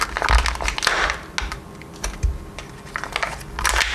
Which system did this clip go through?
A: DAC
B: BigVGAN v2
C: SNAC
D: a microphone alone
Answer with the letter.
D